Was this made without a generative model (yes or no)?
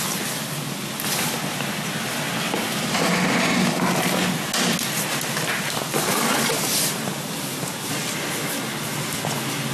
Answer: yes